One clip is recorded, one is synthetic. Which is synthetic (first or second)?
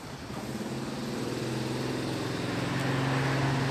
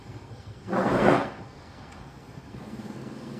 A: second